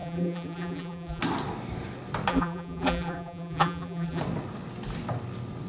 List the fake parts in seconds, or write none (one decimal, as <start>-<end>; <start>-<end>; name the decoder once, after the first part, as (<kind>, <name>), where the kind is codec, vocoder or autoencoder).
0.0-1.2 (vocoder, BigVGAN v2); 2.3-4.2